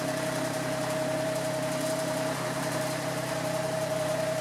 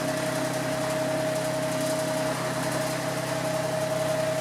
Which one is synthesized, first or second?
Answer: first